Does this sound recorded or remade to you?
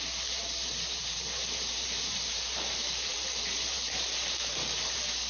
remade